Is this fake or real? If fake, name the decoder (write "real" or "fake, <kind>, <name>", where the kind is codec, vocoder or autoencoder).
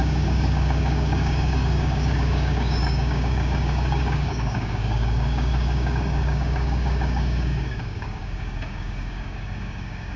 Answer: fake, codec, DAC